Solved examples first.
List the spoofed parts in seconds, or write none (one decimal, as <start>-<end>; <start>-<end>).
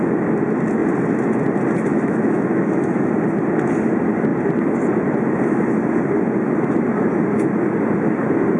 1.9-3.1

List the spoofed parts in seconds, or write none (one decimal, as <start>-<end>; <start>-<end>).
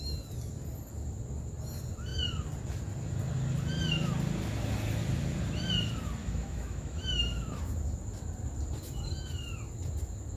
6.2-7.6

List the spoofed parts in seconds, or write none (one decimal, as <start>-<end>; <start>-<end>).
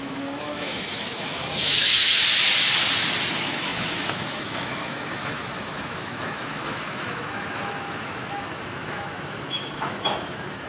0.0-2.2; 3.3-10.7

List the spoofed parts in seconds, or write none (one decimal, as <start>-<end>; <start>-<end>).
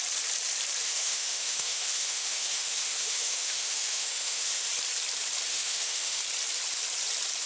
0.8-4.7; 5.5-6.2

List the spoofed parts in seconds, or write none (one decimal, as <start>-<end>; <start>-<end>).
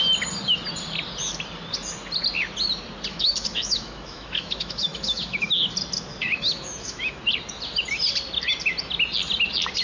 3.1-5.7; 6.2-7.2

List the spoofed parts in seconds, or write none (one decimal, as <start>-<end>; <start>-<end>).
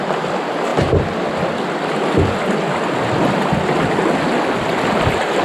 none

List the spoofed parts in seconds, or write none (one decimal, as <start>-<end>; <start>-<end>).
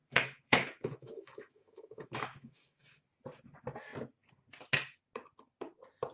0.0-3.0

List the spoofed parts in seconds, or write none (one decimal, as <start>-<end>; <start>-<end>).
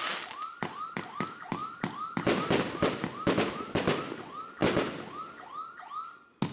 none